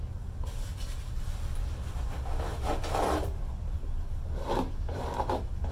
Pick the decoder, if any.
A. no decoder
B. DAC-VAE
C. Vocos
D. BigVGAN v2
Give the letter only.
D